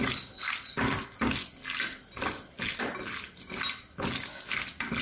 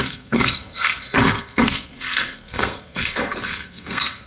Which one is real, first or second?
first